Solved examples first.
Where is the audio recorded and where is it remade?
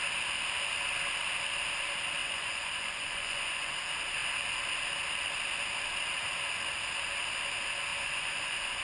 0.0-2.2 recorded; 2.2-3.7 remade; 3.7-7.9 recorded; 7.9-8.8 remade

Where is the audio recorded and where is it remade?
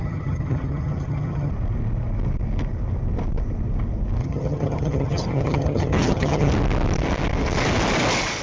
0.0-1.5 remade; 1.5-4.2 recorded; 4.2-6.5 remade; 6.5-8.4 recorded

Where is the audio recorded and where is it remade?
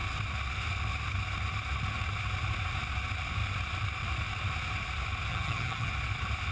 0.0-5.3 recorded; 5.3-5.9 remade; 5.9-6.5 recorded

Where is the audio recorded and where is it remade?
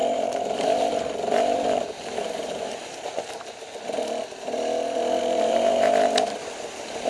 0.0-2.7 remade; 2.7-5.2 recorded; 5.2-6.4 remade; 6.4-7.1 recorded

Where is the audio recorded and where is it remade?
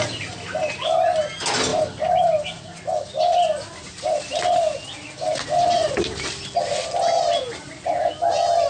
0.0-8.7 recorded